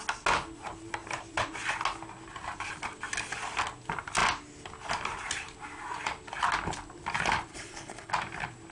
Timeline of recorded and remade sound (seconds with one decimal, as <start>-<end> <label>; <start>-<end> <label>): 0.0-7.5 recorded; 7.5-8.1 remade; 8.1-8.7 recorded